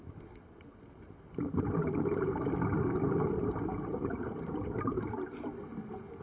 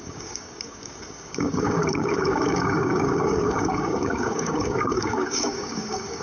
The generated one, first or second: second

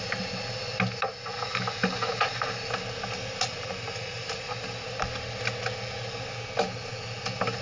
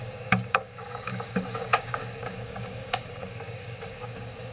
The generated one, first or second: second